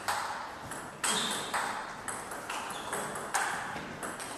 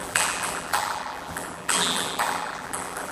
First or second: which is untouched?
first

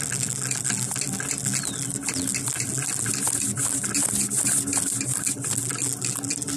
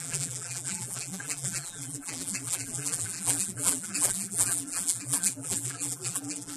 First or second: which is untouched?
first